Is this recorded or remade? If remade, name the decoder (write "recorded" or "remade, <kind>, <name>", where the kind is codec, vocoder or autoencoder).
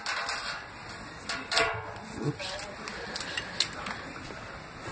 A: recorded